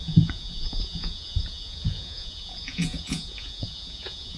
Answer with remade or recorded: remade